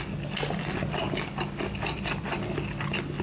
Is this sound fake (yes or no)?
no